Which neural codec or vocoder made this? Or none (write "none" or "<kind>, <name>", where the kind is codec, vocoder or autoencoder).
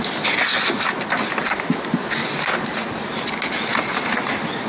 none